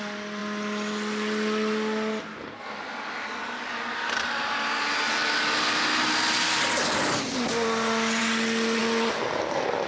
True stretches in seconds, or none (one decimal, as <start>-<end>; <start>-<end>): 0.0-9.9